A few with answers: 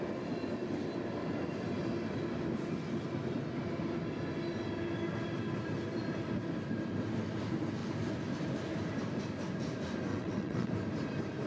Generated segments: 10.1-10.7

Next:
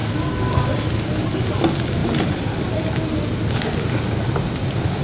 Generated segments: 2.0-3.4